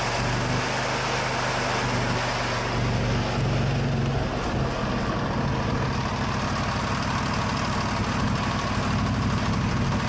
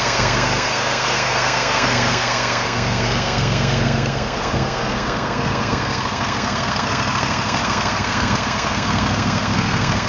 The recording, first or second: first